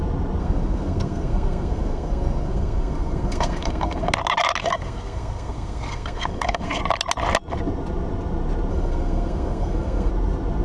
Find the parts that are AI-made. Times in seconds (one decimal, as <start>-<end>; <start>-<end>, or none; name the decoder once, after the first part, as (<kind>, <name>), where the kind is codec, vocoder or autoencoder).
0.4-4.1 (codec, SNAC); 4.6-6.8; 8.7-10.1